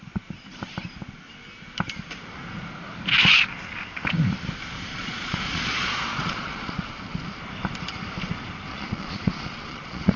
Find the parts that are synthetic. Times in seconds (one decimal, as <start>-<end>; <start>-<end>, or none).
4.9-6.9; 8.7-10.2